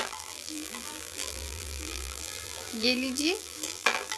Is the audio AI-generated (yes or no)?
yes